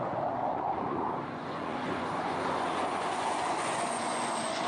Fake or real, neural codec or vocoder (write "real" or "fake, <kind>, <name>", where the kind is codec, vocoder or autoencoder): fake, vocoder, Vocos